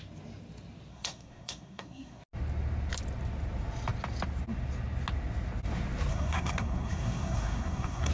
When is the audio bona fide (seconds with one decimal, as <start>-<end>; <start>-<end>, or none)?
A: 0.0-0.9; 2.2-6.1